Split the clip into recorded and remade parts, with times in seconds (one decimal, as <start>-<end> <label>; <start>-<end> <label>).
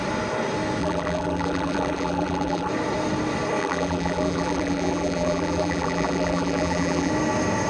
0.0-0.8 recorded; 0.8-2.7 remade; 2.7-3.6 recorded; 3.6-7.1 remade; 7.1-7.7 recorded